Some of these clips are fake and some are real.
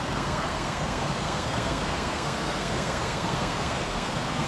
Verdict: fake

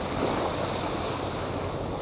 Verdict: real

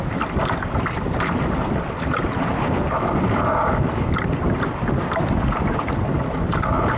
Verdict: real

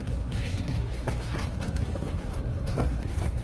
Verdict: fake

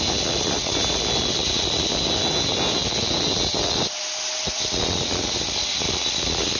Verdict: real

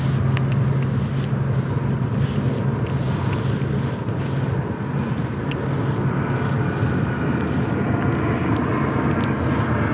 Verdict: real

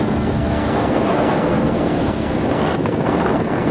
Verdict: fake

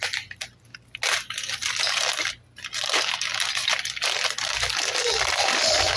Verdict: real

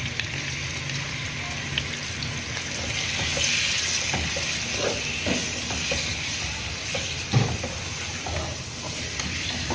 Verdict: real